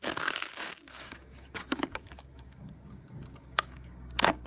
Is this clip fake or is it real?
fake